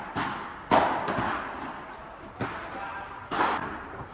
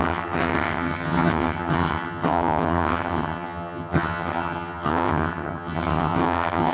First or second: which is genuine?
first